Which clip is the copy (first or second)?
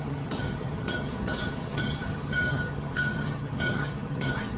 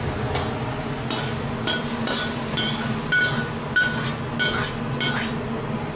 first